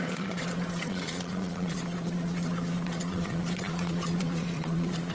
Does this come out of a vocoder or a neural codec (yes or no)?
yes